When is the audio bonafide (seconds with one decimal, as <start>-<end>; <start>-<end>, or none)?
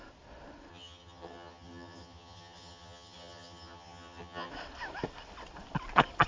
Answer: 0.0-0.7; 4.5-6.3